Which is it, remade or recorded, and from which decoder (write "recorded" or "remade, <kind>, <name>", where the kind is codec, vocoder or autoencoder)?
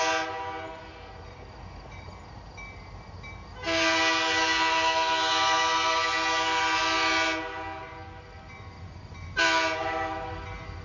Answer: recorded